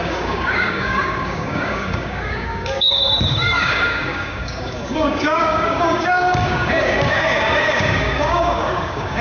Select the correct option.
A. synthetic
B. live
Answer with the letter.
A